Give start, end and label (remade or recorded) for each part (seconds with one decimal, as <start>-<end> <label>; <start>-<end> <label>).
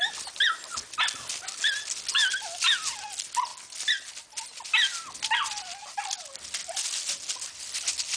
0.0-8.2 recorded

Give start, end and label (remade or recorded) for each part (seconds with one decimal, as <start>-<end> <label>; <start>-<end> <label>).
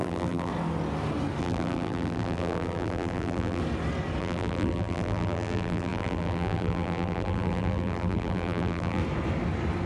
0.0-0.5 remade; 0.5-1.4 recorded; 1.4-3.6 remade; 3.6-4.2 recorded; 4.2-9.0 remade; 9.0-9.9 recorded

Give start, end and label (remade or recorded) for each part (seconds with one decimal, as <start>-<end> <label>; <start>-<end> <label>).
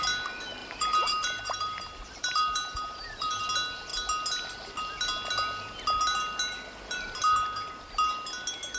0.0-0.6 recorded; 0.6-3.4 remade; 3.4-8.8 recorded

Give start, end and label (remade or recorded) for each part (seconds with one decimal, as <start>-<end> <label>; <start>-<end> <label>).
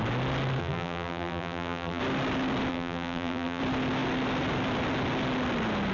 0.0-0.6 recorded; 0.6-2.0 remade; 2.0-2.7 recorded; 2.7-3.6 remade; 3.6-5.9 recorded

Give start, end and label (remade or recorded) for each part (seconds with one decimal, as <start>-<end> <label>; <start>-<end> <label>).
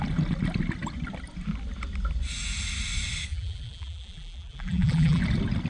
0.0-3.3 recorded; 3.3-5.2 remade; 5.2-5.7 recorded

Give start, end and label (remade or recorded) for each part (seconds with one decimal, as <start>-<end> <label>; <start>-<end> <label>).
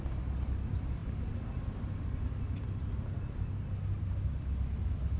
0.0-5.2 recorded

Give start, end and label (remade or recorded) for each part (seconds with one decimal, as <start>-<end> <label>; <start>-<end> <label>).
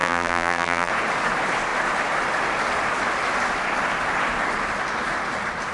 0.0-0.9 remade; 0.9-5.7 recorded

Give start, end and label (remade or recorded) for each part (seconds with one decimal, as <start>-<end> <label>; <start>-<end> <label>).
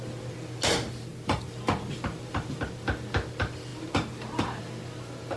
0.0-5.4 recorded